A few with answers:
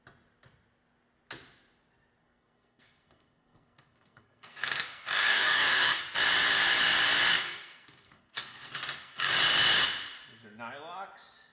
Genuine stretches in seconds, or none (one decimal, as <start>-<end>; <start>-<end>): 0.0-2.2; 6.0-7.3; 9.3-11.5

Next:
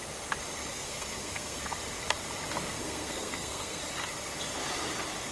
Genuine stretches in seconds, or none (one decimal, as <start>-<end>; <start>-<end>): 0.0-0.7; 1.6-2.7; 3.8-5.3

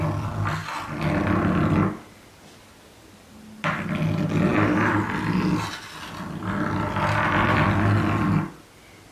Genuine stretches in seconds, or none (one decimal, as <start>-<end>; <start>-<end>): 0.0-9.1